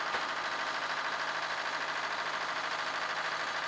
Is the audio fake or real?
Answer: real